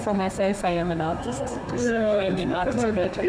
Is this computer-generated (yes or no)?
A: yes